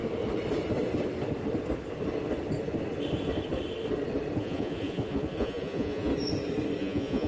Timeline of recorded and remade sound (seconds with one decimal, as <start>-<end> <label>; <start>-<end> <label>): 0.0-4.4 recorded; 4.4-6.1 remade; 6.1-6.8 recorded; 6.8-7.3 remade